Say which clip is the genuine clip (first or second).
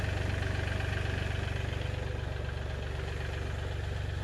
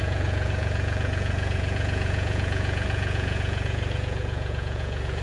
first